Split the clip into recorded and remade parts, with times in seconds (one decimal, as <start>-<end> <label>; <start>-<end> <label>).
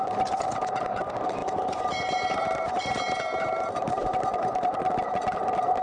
0.0-5.8 remade